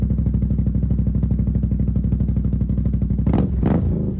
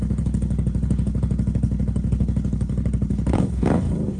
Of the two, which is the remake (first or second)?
second